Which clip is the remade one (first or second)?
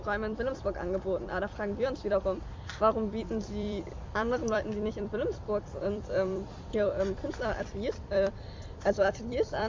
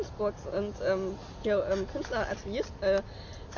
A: first